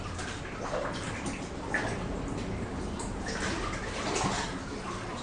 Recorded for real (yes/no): yes